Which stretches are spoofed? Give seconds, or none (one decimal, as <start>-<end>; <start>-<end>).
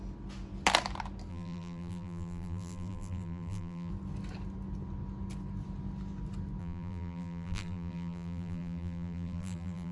1.3-3.9; 6.6-9.9